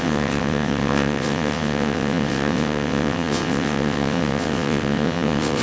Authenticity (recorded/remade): remade